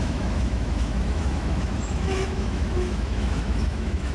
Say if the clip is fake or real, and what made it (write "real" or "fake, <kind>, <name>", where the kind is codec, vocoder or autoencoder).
fake, autoencoder, DAC-VAE